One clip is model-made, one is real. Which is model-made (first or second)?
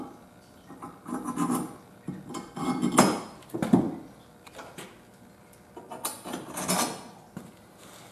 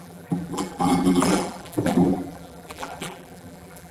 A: second